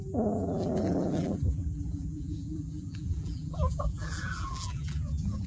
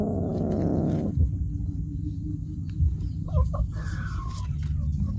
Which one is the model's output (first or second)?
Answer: first